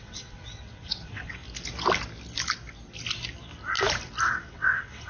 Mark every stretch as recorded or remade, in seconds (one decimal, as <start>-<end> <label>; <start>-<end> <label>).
0.0-1.4 remade; 1.4-4.5 recorded; 4.5-5.1 remade